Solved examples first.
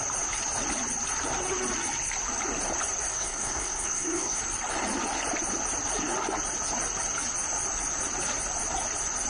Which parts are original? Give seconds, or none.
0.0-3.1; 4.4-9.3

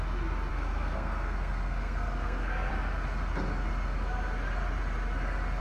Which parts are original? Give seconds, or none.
0.0-0.5; 2.7-5.6

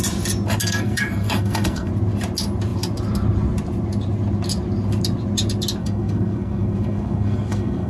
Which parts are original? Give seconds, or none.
0.0-0.6; 1.9-5.8

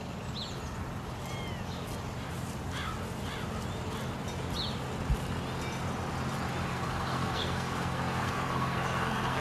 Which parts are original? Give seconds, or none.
0.0-6.7

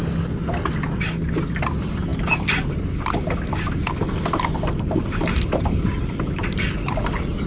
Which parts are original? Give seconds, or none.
0.0-7.5

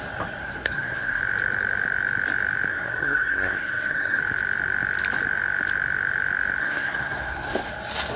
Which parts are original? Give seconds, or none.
0.0-0.4; 1.2-2.7; 4.2-6.6; 7.7-8.2

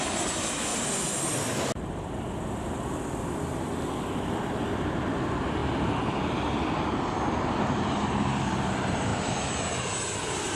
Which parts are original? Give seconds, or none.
0.0-10.6

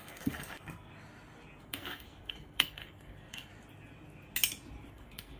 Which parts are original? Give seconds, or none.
0.9-1.6; 3.5-4.9